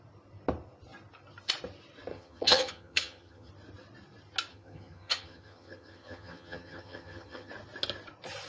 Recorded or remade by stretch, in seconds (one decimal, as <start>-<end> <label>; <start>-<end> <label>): 0.0-2.1 recorded; 2.1-3.5 remade; 3.5-4.5 recorded; 4.5-7.5 remade; 7.5-8.5 recorded

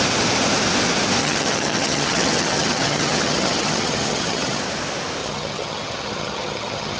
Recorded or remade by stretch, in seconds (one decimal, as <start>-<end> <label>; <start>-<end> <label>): 0.0-1.2 recorded; 1.2-4.6 remade; 4.6-5.2 recorded; 5.2-7.0 remade

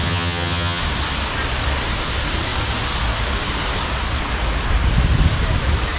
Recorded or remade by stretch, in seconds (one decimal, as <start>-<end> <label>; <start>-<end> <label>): 0.0-0.8 remade; 0.8-6.0 recorded